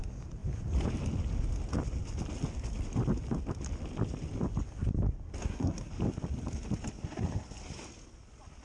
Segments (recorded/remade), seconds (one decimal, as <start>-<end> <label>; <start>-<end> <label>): 0.0-5.4 recorded; 5.4-5.9 remade; 5.9-8.6 recorded